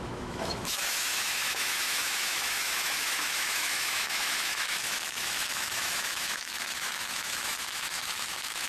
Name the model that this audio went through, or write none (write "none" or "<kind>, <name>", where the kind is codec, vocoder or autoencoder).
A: autoencoder, DAC-VAE